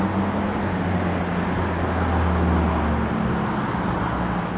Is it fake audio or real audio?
real